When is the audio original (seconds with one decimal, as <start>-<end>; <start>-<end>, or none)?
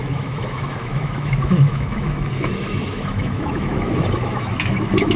none